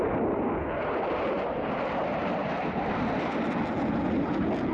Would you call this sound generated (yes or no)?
no